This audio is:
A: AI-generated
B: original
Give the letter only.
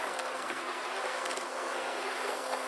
A